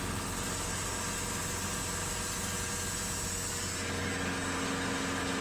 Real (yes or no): yes